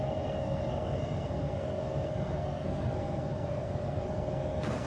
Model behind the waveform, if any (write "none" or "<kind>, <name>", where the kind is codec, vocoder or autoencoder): codec, SNAC